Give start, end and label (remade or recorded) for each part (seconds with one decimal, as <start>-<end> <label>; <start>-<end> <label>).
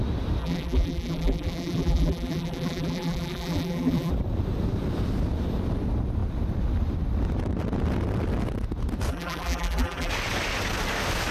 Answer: 0.0-0.4 recorded; 0.4-4.1 remade; 4.1-9.1 recorded; 9.1-10.1 remade; 10.1-11.3 recorded